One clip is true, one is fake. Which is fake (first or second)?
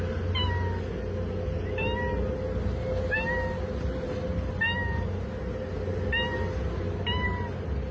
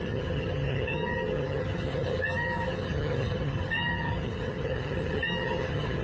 second